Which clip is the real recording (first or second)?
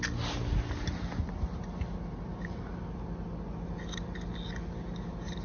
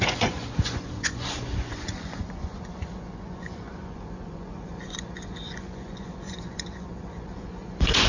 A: first